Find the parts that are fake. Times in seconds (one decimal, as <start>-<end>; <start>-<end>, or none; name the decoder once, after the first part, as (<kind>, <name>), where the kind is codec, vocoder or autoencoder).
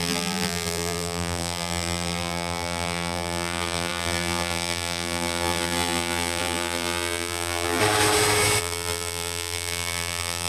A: 0.0-7.8 (vocoder, BigVGAN v2); 8.6-10.5